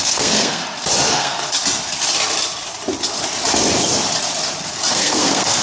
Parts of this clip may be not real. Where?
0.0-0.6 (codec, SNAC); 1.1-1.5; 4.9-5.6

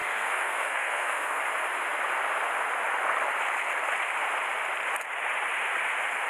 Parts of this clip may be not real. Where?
0.0-1.4 (codec, SNAC)

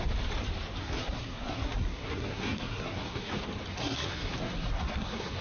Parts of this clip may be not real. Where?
0.8-3.3 (codec, SNAC); 3.7-5.4